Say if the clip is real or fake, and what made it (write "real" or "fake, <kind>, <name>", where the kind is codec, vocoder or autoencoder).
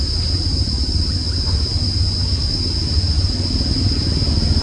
real